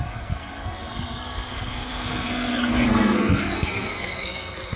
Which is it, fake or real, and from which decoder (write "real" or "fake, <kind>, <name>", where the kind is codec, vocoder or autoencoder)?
fake, codec, SNAC